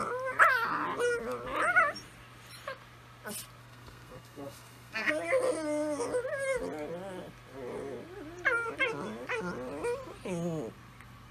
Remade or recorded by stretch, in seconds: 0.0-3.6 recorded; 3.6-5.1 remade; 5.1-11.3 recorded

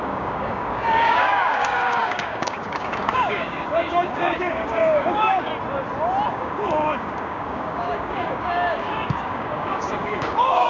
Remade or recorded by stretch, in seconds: 0.0-5.5 remade; 5.5-6.3 recorded; 6.3-10.7 remade

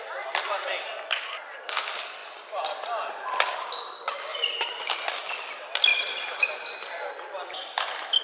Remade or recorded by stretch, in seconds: 0.0-4.3 recorded; 4.3-4.9 remade; 4.9-8.2 recorded